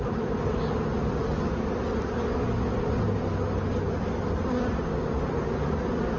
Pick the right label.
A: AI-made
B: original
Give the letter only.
B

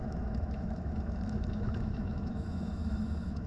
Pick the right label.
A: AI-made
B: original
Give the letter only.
A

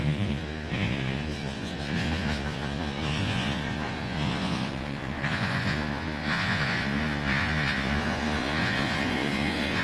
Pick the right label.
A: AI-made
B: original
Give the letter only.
A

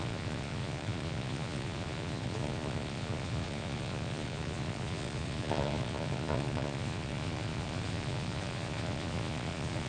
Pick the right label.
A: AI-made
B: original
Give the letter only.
A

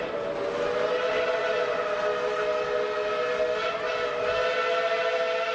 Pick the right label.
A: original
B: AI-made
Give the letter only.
A